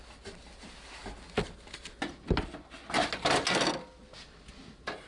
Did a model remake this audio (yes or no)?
no